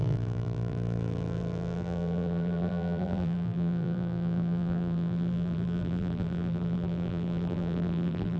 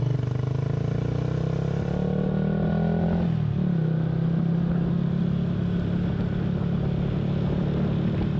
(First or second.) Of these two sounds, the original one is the second